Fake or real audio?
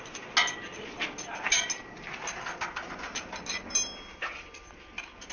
real